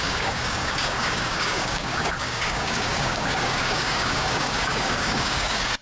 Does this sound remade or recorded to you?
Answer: remade